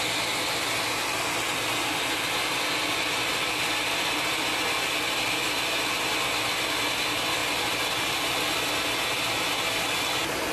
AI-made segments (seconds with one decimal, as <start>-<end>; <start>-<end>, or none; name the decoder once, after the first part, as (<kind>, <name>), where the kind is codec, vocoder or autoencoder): none